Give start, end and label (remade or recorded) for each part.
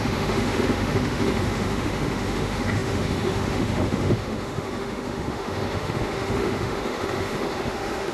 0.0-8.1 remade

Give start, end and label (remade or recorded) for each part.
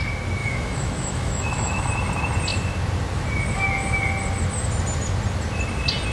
0.0-0.4 recorded; 0.4-1.9 remade; 1.9-6.1 recorded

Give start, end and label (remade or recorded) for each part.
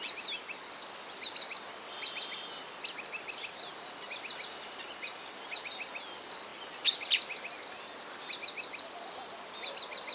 0.0-10.1 recorded